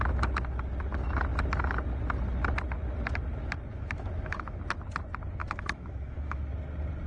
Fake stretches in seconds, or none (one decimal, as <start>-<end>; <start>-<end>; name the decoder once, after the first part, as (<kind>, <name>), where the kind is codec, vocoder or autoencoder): 3.7-4.6 (autoencoder, DAC-VAE); 5.4-6.4